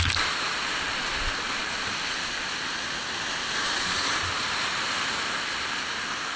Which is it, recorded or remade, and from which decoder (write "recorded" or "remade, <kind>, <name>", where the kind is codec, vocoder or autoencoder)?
recorded